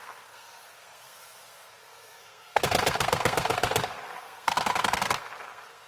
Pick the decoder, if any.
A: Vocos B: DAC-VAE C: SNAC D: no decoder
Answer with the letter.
C